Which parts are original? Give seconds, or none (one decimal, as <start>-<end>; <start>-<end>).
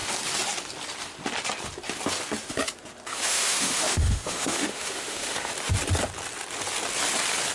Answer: 0.0-3.1; 5.5-7.5